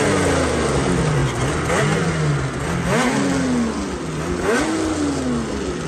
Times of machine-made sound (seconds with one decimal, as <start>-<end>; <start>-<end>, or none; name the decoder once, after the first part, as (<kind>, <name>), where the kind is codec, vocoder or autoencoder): none